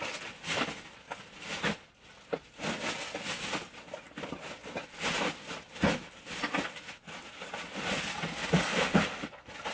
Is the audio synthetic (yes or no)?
no